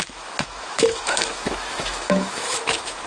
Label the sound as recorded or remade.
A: remade